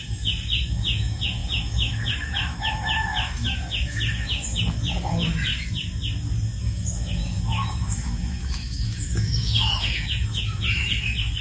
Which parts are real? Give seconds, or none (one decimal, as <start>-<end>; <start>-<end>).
5.5-6.6